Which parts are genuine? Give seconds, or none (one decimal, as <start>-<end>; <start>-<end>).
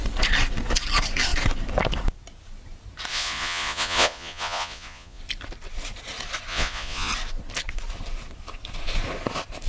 0.0-3.1; 5.2-6.5; 7.1-9.7